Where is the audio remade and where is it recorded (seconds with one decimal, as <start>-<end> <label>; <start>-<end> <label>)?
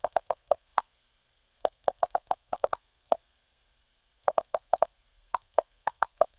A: 0.0-6.4 remade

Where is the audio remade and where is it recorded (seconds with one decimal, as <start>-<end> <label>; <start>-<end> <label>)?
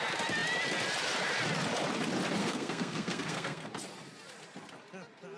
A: 0.0-2.4 recorded; 2.4-3.7 remade; 3.7-5.4 recorded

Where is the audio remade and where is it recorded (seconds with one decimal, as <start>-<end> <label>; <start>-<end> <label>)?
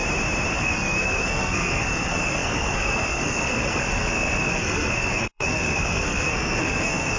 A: 0.0-0.5 recorded; 0.5-7.2 remade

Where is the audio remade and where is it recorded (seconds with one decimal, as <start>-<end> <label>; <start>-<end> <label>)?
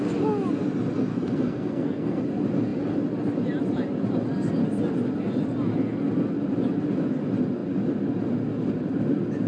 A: 0.0-1.1 recorded; 1.1-2.2 remade; 2.2-9.5 recorded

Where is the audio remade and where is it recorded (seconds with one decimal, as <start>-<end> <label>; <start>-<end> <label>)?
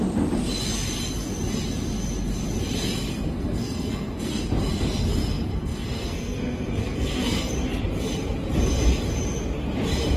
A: 0.0-3.1 recorded; 3.1-4.4 remade; 4.4-5.5 recorded; 5.5-7.5 remade; 7.5-10.2 recorded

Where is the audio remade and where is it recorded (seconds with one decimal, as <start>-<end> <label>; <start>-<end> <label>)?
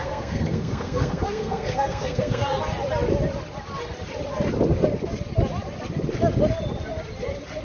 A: 0.0-2.6 remade; 2.6-7.6 recorded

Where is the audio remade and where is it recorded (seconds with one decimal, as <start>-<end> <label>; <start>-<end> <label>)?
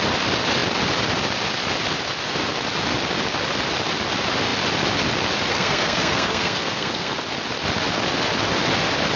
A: 0.0-5.5 recorded; 5.5-7.2 remade; 7.2-9.2 recorded